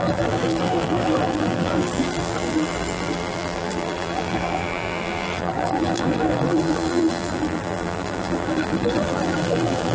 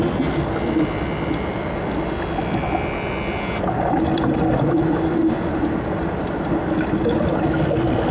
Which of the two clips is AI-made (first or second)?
first